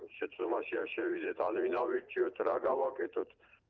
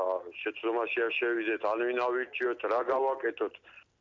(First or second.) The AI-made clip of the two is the first